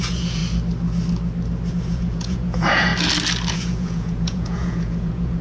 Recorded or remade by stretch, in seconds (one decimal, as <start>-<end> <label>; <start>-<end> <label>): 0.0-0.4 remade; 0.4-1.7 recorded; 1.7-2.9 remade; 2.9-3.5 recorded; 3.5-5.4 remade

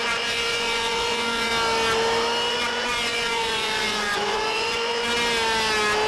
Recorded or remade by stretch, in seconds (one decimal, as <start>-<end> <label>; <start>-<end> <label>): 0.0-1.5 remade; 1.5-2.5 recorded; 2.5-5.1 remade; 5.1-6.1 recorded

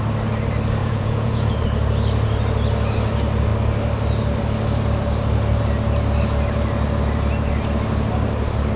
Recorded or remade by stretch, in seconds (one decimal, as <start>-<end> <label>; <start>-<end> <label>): 0.0-0.8 recorded; 0.8-1.6 remade; 1.6-8.8 recorded

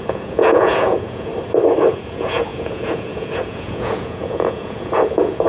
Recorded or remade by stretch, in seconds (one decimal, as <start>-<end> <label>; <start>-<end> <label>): 0.0-1.3 remade; 1.3-1.9 recorded; 1.9-5.5 remade

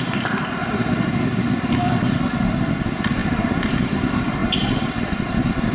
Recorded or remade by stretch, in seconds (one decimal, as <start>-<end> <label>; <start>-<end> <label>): 0.0-5.7 recorded